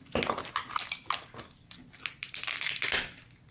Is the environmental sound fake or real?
real